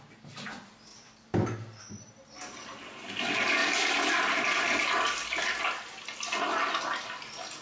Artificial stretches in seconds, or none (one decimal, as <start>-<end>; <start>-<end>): 0.9-1.8; 3.6-6.8